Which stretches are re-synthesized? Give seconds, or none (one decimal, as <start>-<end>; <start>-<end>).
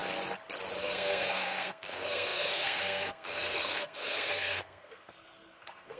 0.8-6.0